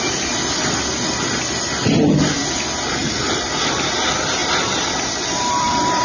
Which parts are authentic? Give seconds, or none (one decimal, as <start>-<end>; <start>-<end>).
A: 0.0-3.0; 4.0-4.4